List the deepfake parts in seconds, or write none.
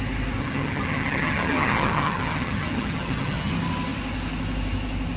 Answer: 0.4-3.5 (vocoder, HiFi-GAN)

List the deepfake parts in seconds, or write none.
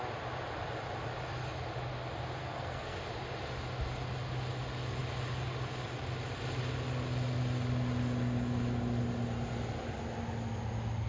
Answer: 2.4-3.0 (codec, SNAC)